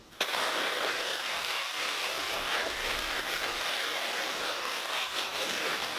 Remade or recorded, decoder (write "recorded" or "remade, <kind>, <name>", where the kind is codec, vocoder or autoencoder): remade, codec, DAC